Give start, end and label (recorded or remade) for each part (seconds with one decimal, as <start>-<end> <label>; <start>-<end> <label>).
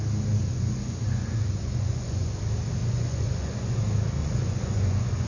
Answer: 0.0-0.4 recorded; 0.4-2.4 remade; 2.4-2.8 recorded; 2.8-3.8 remade; 3.8-4.2 recorded; 4.2-5.3 remade